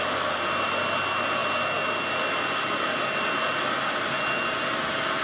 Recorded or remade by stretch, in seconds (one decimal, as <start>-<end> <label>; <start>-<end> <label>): 0.0-5.2 recorded